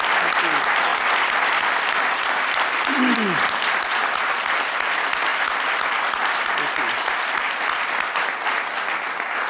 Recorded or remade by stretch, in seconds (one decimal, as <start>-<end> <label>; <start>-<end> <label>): 0.0-0.9 recorded; 0.9-4.3 remade; 4.3-5.3 recorded; 5.3-7.2 remade; 7.2-9.5 recorded